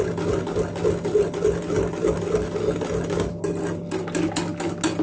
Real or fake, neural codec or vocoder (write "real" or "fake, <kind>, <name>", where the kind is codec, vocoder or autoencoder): real